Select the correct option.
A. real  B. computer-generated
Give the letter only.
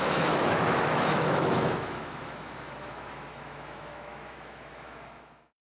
B